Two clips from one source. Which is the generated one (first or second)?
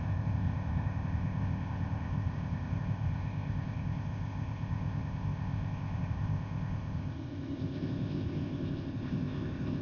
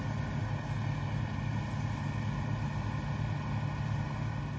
first